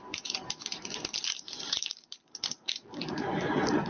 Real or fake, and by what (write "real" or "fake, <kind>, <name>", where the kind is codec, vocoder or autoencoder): fake, vocoder, BigVGAN v2